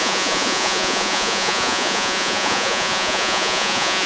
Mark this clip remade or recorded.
remade